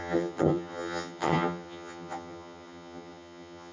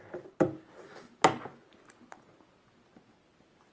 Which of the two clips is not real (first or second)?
first